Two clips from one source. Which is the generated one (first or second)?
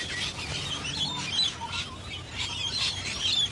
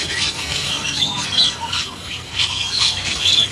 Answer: second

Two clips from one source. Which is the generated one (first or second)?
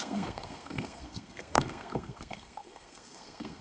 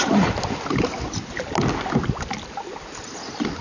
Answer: first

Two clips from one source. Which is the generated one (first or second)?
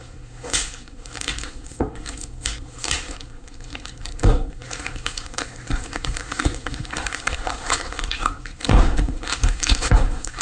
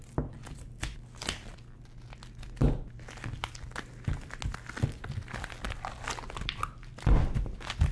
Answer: first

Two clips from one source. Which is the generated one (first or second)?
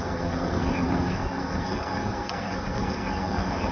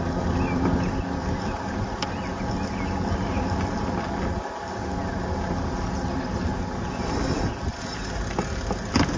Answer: first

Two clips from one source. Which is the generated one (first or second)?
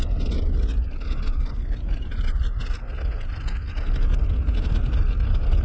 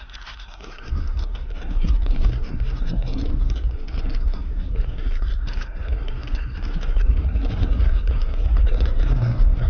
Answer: second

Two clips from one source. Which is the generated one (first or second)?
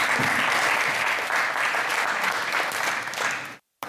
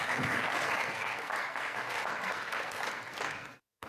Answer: second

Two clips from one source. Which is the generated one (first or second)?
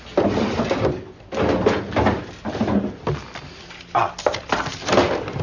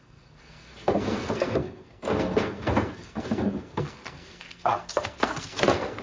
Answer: second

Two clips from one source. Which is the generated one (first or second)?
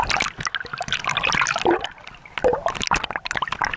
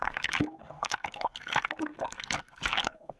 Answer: second